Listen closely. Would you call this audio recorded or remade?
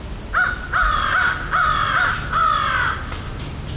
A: recorded